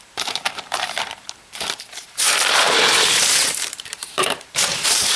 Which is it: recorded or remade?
remade